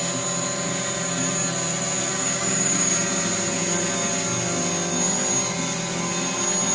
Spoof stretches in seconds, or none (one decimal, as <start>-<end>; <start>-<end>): 2.1-2.9